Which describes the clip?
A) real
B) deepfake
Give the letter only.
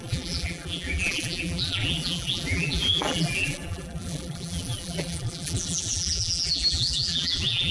B